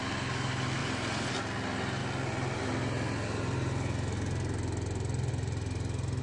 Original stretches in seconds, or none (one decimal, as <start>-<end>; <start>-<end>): 0.0-0.8; 1.3-6.2